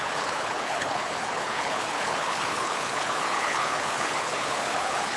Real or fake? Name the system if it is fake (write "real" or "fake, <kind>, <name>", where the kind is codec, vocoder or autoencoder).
fake, codec, HILCodec